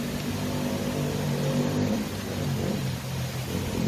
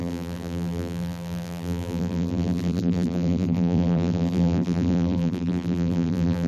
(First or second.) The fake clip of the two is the second